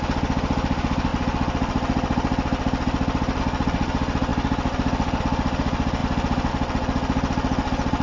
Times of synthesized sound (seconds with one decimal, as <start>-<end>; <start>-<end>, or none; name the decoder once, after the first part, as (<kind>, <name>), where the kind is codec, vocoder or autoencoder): none